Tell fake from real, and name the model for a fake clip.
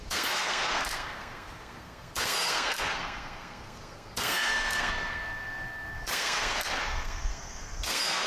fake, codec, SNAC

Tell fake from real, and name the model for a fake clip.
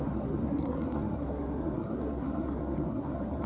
fake, codec, SNAC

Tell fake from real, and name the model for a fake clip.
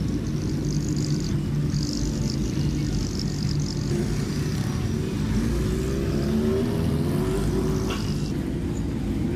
real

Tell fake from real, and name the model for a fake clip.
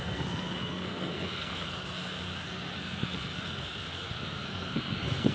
fake, codec, SNAC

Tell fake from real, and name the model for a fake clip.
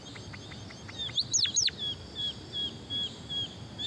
real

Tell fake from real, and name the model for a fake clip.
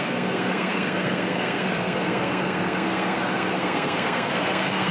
fake, codec, SNAC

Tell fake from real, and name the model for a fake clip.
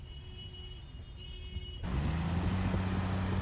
real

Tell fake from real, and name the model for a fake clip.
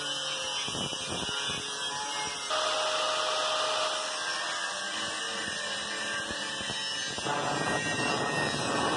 real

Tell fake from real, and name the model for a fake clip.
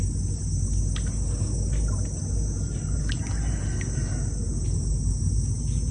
real